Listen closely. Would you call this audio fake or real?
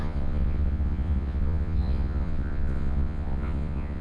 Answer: fake